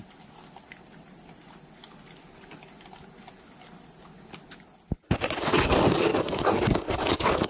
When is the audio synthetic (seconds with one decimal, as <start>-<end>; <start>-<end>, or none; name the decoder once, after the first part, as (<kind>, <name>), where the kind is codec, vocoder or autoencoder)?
6.1-7.5 (codec, DAC)